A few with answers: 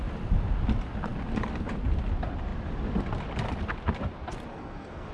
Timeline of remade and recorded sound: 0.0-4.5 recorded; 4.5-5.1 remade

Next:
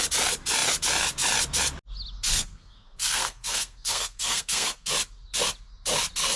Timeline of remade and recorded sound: 0.0-2.3 recorded; 2.3-4.9 remade; 4.9-6.4 recorded

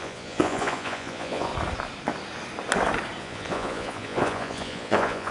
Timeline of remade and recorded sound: 0.0-1.5 remade; 1.5-3.2 recorded; 3.2-5.3 remade

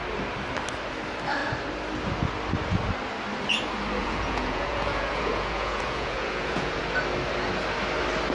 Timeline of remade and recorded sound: 0.0-4.0 recorded; 4.0-6.8 remade; 6.8-8.3 recorded

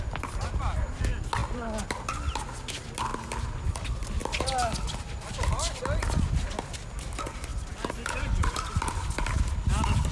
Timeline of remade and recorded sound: 0.0-10.1 recorded

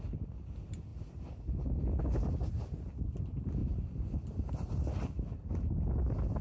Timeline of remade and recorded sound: 0.0-6.4 recorded